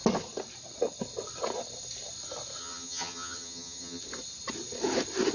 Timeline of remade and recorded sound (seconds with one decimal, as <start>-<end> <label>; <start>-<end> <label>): 0.0-2.6 recorded; 2.6-4.0 remade; 4.0-5.3 recorded

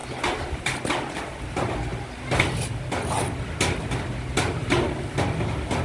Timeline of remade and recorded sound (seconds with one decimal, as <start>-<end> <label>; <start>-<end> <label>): 0.0-1.1 recorded; 1.1-1.9 remade; 1.9-5.8 recorded

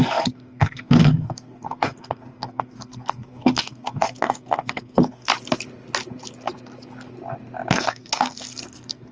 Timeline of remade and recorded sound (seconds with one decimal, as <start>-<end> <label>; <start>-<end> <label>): 0.0-5.3 remade; 5.3-7.7 recorded; 7.7-9.1 remade

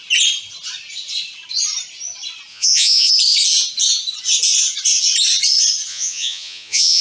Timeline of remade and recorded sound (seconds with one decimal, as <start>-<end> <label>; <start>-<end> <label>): 0.0-2.5 recorded; 2.5-3.1 remade; 3.1-5.9 recorded; 5.9-7.0 remade

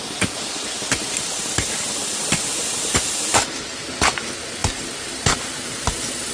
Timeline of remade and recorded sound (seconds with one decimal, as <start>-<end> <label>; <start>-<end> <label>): 0.0-6.3 recorded

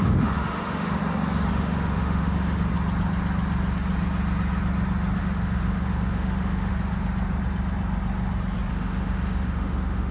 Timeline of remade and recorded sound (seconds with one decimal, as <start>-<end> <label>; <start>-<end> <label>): 0.0-1.0 remade; 1.0-1.5 recorded; 1.5-2.7 remade; 2.7-5.2 recorded; 5.2-6.7 remade; 6.7-8.7 recorded; 8.7-10.1 remade

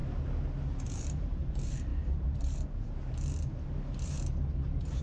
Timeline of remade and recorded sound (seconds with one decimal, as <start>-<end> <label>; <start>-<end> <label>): 0.0-0.9 recorded; 0.9-5.0 remade